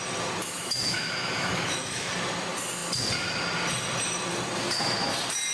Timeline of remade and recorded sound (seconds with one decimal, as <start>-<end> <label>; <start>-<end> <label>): 0.0-0.4 recorded; 0.4-2.1 remade; 2.1-5.5 recorded